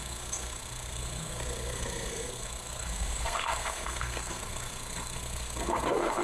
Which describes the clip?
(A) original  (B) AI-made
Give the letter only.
B